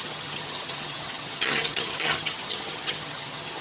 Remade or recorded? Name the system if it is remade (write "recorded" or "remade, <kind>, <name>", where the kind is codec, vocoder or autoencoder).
remade, vocoder, HiFi-GAN